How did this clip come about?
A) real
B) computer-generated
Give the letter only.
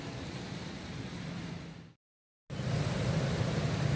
A